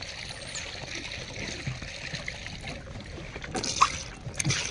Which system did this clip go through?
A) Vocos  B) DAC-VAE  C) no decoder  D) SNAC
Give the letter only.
C